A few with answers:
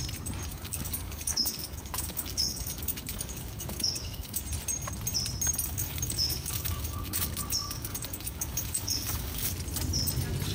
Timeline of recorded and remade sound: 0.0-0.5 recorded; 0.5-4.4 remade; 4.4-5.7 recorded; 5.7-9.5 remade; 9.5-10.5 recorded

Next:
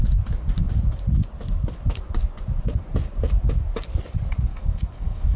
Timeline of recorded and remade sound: 0.0-4.5 recorded; 4.5-5.4 remade

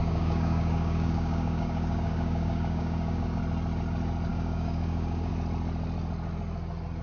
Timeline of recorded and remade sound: 0.0-3.4 remade; 3.4-4.3 recorded; 4.3-5.3 remade; 5.3-7.0 recorded

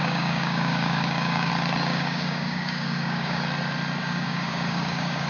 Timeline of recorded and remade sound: 0.0-1.5 remade; 1.5-1.9 recorded; 1.9-3.4 remade; 3.4-4.0 recorded; 4.0-5.3 remade

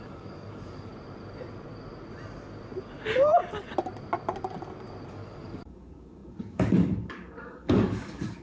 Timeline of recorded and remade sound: 0.0-0.9 remade; 0.9-5.1 recorded; 5.1-8.4 remade

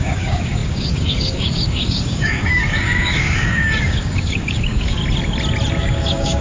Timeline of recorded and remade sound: 0.0-5.0 remade; 5.0-5.8 recorded; 5.8-6.4 remade